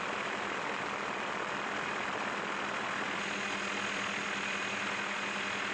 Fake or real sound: real